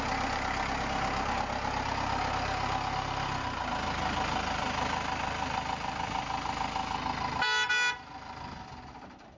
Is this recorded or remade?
recorded